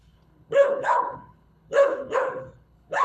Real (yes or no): no